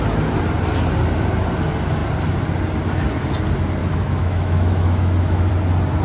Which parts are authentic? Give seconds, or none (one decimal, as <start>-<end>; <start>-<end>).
0.0-3.8; 5.5-6.0